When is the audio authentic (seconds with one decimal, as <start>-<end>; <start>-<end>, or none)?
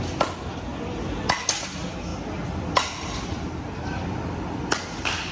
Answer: 0.0-5.3